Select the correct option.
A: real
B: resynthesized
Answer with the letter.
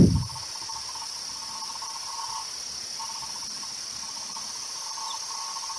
A